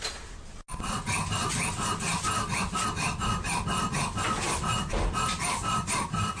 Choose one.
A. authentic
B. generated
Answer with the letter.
A